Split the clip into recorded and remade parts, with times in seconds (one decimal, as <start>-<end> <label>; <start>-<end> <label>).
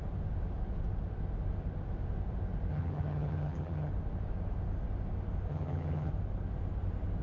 0.0-2.7 recorded; 2.7-3.9 remade; 3.9-5.5 recorded; 5.5-6.1 remade; 6.1-7.2 recorded